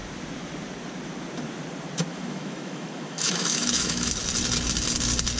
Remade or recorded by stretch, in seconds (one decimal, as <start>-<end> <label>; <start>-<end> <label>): 0.0-2.1 recorded; 2.1-4.1 remade; 4.1-5.4 recorded